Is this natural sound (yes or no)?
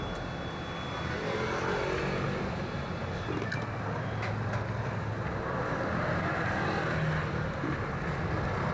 yes